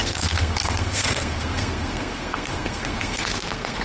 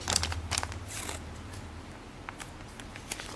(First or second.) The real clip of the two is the second